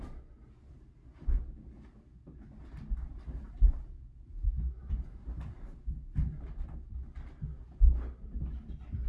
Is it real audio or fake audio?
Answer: real